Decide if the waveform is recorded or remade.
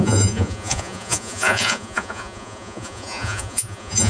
remade